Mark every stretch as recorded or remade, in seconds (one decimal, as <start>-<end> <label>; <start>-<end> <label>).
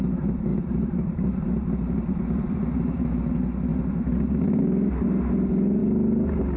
0.0-0.5 recorded; 0.5-3.1 remade; 3.1-6.6 recorded